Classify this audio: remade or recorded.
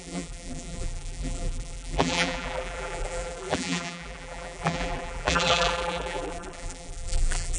remade